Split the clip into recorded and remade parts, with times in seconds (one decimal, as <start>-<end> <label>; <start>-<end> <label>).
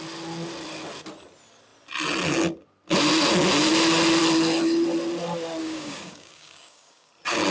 0.0-5.6 recorded; 5.6-7.1 remade; 7.1-7.5 recorded